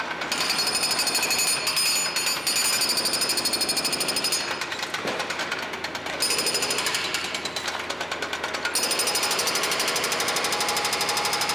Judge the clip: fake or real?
real